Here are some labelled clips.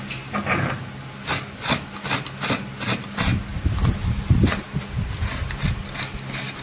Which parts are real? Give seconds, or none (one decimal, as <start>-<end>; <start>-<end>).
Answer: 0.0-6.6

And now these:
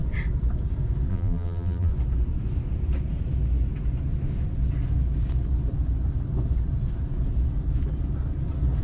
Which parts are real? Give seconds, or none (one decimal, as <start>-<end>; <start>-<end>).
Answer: 0.0-1.1; 1.9-8.8

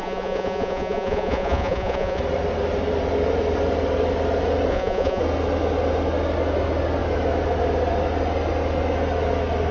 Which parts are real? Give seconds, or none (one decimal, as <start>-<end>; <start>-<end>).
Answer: 2.2-4.7; 5.2-9.7

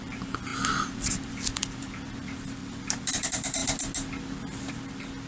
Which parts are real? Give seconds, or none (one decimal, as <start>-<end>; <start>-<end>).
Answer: 0.5-1.3; 2.6-3.2; 3.6-4.7

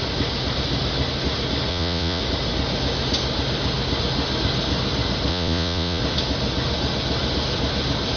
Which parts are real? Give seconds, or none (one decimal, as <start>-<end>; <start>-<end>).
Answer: 0.0-1.7; 2.2-5.3; 6.0-8.2

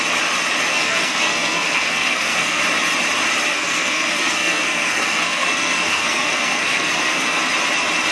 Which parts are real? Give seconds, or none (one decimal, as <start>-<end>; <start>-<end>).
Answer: 0.0-0.7; 2.6-3.5; 7.4-8.1

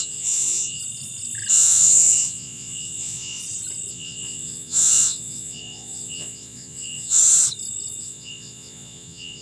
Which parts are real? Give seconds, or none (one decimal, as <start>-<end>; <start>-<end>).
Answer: 0.8-1.5; 3.4-3.9; 7.2-8.0

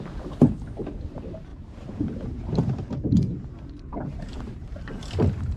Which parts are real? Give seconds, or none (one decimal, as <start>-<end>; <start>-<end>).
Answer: 0.0-1.5; 4.9-5.6